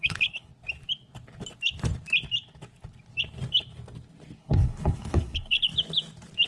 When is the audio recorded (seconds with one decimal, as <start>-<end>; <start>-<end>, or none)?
0.5-4.4; 5.7-6.5